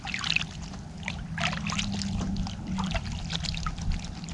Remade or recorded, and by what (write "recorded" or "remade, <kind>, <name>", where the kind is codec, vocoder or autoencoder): recorded